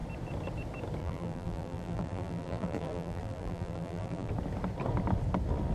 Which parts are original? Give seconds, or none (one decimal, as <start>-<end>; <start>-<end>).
0.0-1.0; 4.3-5.7